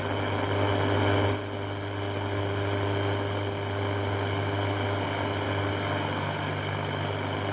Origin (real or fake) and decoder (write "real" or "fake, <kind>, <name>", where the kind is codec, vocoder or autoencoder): real